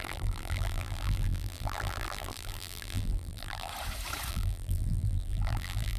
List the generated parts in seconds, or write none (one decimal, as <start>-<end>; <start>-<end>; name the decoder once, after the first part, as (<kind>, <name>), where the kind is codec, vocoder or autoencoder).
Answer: 0.0-3.7 (vocoder, BigVGAN v2); 4.3-6.0